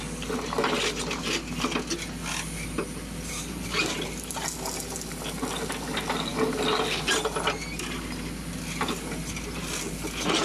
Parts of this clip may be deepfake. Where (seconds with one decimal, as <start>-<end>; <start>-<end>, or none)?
none